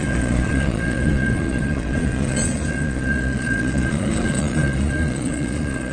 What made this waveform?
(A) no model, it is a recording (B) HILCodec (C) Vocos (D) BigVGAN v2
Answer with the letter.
C